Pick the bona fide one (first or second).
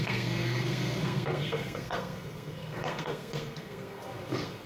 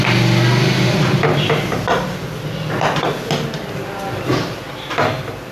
second